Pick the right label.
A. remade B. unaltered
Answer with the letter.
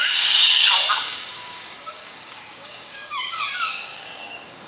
A